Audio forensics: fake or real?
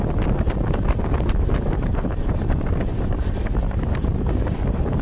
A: fake